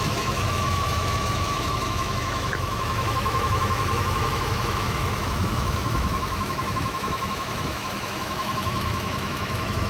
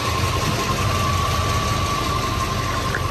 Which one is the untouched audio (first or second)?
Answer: second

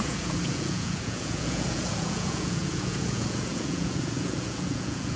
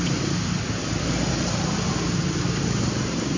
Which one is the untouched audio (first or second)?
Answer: second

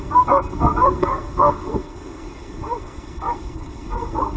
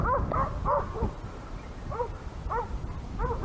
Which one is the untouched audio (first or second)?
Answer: second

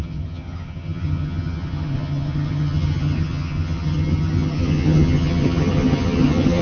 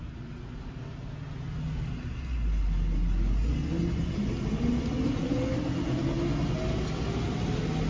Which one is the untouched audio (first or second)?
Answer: second